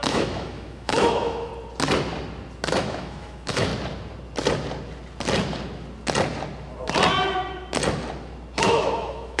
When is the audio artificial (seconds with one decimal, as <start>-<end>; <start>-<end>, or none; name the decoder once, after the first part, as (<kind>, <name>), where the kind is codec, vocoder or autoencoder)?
0.0-1.5 (autoencoder, DAC-VAE); 2.8-3.7; 8.6-9.4